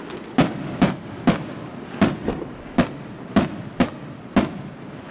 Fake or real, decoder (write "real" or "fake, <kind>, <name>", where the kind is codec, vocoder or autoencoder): real